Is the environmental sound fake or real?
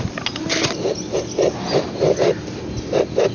real